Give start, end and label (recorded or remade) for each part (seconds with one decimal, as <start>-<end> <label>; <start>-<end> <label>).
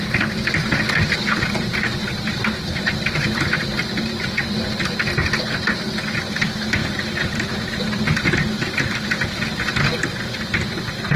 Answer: 0.0-4.9 remade; 4.9-6.8 recorded; 6.8-9.1 remade; 9.1-11.2 recorded